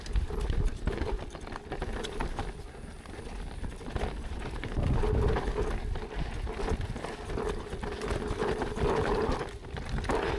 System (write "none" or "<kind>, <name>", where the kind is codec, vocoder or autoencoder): none